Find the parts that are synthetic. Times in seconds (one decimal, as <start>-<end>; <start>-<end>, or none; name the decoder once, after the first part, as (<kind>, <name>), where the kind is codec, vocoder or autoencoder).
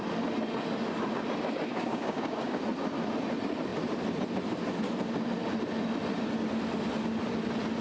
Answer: 1.7-2.6 (codec, DAC)